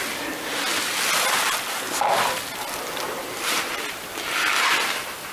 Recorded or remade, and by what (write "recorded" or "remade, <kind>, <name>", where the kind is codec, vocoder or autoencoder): recorded